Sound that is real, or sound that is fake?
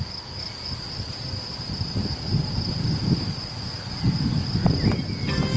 real